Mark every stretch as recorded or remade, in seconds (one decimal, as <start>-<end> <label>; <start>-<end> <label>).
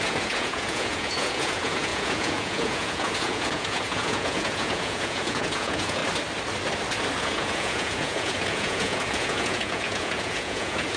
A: 0.0-6.0 remade; 6.0-7.2 recorded; 7.2-11.0 remade